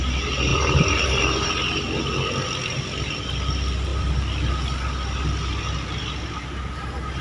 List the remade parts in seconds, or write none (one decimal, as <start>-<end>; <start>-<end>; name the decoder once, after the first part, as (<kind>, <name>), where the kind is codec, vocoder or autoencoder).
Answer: 0.5-1.5 (vocoder, BigVGAN v2)